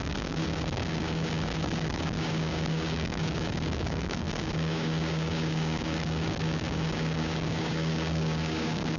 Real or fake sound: fake